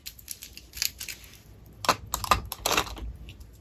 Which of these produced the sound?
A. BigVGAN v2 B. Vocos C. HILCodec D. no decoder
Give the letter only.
D